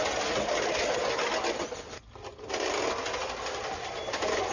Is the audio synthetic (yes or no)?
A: no